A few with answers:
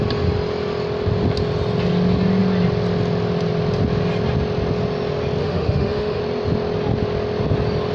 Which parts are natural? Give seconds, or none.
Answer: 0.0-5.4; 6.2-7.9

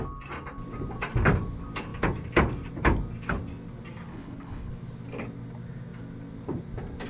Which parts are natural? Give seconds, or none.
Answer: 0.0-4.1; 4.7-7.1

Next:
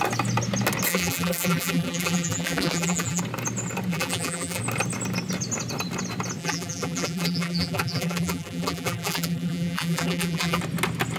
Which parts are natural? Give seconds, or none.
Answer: 0.0-0.9; 3.2-3.9; 4.6-6.4; 10.6-11.2